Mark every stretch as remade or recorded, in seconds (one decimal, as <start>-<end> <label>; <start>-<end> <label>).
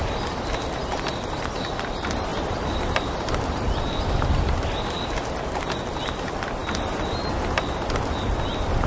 0.0-2.3 recorded; 2.3-4.4 remade; 4.4-8.9 recorded